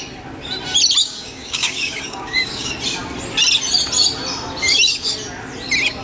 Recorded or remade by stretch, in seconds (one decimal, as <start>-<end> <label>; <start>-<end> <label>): 0.0-1.0 recorded; 1.0-2.7 remade; 2.7-6.0 recorded